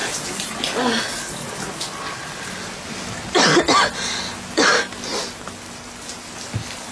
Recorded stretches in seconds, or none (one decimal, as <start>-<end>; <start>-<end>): 0.0-6.9